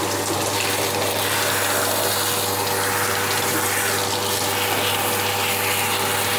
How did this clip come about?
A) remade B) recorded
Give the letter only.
B